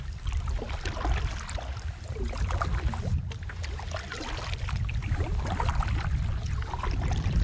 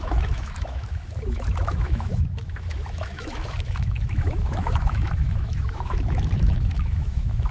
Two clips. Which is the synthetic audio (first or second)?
second